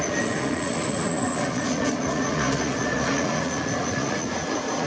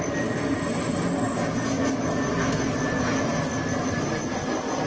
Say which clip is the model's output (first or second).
first